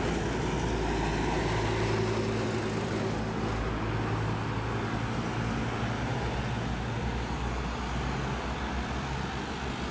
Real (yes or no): yes